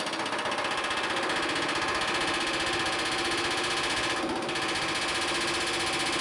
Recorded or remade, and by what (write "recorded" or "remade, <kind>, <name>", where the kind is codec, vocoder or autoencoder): recorded